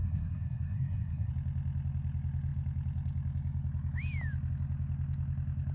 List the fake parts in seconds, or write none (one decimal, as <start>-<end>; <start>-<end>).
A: 0.0-1.3